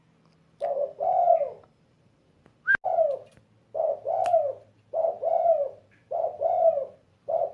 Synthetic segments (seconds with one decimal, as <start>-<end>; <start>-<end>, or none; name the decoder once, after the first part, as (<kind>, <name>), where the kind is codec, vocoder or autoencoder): 5.6-7.5 (vocoder, BigVGAN v2)